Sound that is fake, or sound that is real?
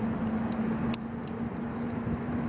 real